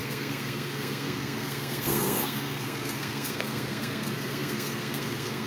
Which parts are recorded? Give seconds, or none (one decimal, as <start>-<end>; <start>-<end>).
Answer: none